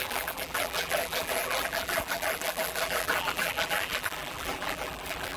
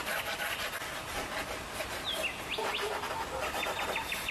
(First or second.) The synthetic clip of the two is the first